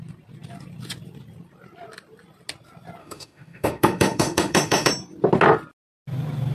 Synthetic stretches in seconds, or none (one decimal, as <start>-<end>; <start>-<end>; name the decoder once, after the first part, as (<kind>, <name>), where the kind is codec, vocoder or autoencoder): 3.0-4.9 (autoencoder, DAC-VAE)